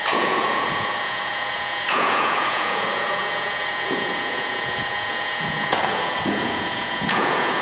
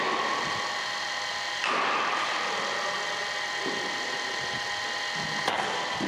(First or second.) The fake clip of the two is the first